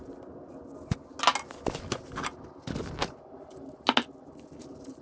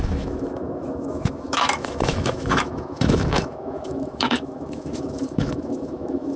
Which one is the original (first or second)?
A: first